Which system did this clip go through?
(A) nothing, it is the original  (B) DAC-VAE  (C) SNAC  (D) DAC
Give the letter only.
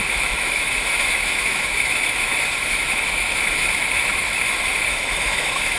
B